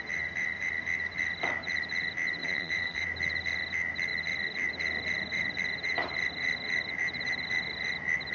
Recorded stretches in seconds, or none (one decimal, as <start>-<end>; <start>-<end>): 0.0-2.4; 3.1-8.3